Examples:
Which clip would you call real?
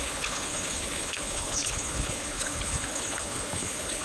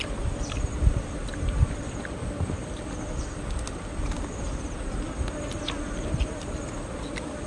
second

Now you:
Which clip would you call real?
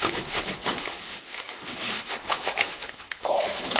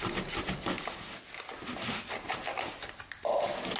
second